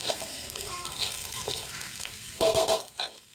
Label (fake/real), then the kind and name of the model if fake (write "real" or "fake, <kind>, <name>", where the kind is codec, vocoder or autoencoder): fake, codec, SNAC